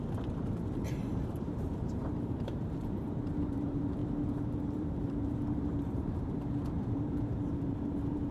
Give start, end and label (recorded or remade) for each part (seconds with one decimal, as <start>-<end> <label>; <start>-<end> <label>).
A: 0.0-8.3 remade